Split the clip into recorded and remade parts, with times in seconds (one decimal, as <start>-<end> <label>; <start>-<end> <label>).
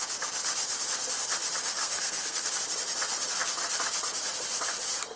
0.0-1.8 recorded; 1.8-2.5 remade; 2.5-5.2 recorded